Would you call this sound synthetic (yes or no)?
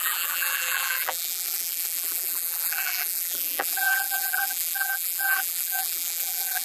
yes